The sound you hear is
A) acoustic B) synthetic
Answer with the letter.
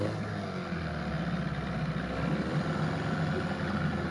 A